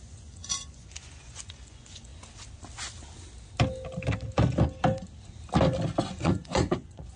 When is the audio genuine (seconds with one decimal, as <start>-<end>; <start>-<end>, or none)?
2.1-6.2